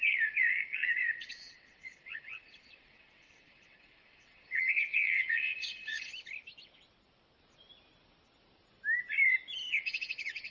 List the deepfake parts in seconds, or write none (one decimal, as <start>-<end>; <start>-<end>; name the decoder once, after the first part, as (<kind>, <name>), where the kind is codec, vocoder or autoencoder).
0.0-6.1 (vocoder, WaveNeXt); 9.7-10.5